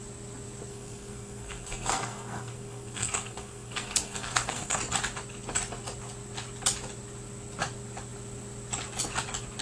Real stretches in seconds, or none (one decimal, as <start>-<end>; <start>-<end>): 0.0-0.7; 4.8-9.6